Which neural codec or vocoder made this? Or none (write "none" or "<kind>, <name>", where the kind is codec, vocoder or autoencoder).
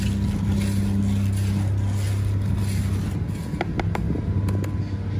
none